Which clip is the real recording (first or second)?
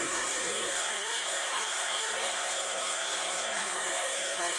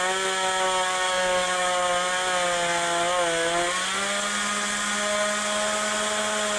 second